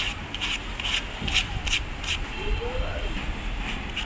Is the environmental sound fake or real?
real